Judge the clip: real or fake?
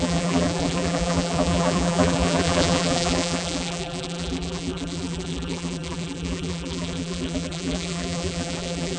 fake